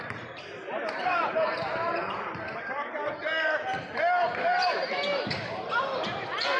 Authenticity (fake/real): fake